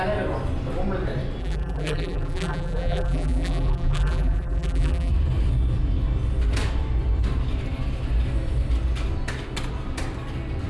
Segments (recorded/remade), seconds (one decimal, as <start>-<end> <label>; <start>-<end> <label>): 0.0-1.4 recorded; 1.4-5.1 remade; 5.1-10.7 recorded